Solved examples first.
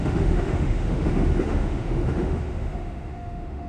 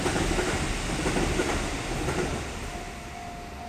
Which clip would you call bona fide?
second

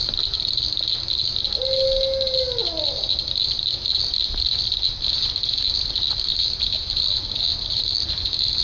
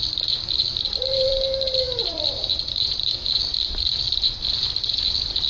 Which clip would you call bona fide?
first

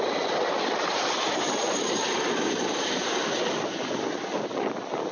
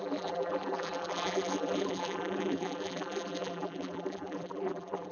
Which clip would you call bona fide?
first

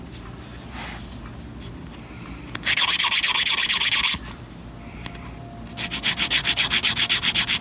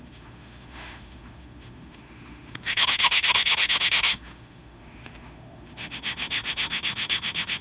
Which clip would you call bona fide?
first